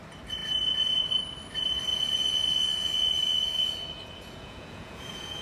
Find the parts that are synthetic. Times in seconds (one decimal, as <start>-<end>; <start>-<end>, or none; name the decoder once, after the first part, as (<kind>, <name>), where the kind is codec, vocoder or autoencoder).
1.9-5.4 (vocoder, Vocos)